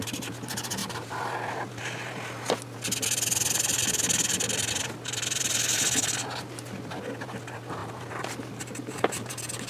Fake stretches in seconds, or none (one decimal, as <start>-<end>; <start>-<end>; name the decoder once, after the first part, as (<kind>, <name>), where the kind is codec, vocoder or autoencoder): none